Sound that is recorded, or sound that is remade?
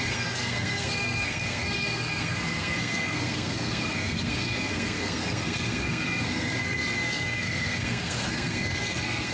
remade